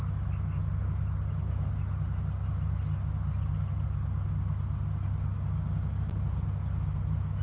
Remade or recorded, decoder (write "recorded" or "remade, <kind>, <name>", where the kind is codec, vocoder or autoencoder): recorded